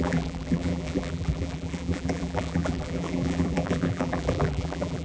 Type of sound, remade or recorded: remade